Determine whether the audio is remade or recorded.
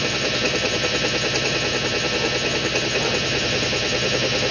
recorded